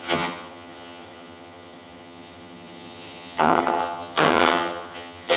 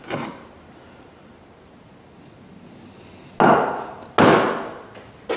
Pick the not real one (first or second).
first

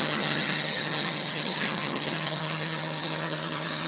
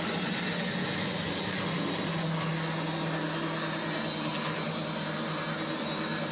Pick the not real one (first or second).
first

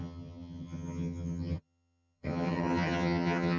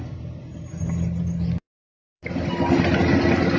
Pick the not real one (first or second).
first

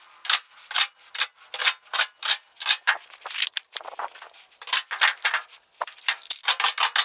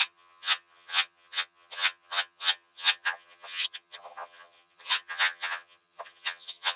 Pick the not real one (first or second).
second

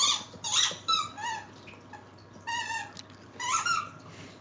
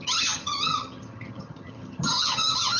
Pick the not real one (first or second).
second